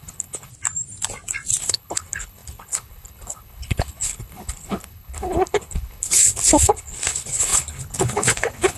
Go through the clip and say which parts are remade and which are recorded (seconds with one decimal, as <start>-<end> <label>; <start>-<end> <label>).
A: 0.0-0.5 remade; 0.5-1.6 recorded; 1.6-8.8 remade